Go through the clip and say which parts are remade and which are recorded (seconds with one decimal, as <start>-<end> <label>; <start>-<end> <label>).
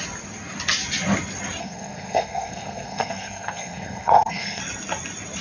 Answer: 0.0-1.6 recorded; 1.6-4.6 remade; 4.6-5.4 recorded